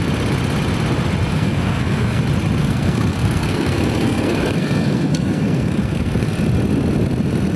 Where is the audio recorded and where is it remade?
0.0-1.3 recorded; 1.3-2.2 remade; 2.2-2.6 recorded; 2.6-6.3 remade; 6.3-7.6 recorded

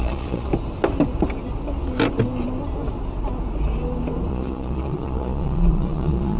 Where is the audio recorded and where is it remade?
0.0-0.5 remade; 0.5-4.3 recorded; 4.3-6.4 remade

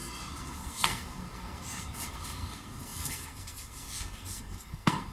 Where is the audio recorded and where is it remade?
0.0-5.1 remade

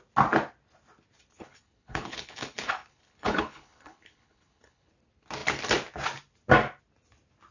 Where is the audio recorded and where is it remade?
0.0-1.4 recorded; 1.4-4.9 remade; 4.9-7.5 recorded

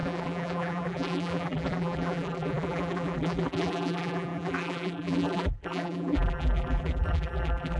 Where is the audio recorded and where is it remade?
0.0-7.8 remade

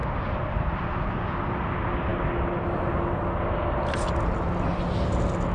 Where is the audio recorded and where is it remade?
0.0-5.5 recorded

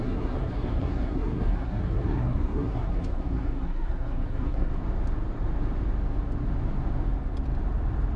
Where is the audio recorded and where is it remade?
0.0-4.7 remade; 4.7-8.2 recorded

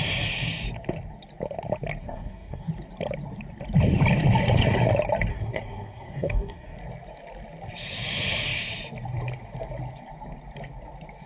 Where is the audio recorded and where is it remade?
0.0-2.0 recorded; 2.0-2.7 remade; 2.7-5.3 recorded; 5.3-6.8 remade; 6.8-11.3 recorded